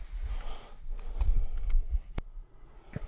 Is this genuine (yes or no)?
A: yes